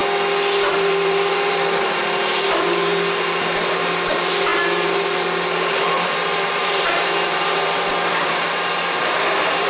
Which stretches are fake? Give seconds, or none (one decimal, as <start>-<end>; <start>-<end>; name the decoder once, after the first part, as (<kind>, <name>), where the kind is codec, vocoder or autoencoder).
0.7-9.7 (vocoder, BigVGAN v2)